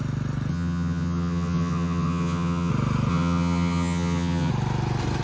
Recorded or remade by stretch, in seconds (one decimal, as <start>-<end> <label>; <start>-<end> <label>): 0.0-0.5 recorded; 0.5-2.7 remade; 2.7-3.1 recorded; 3.1-4.5 remade; 4.5-5.2 recorded